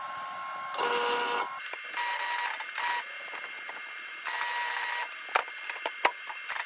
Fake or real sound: real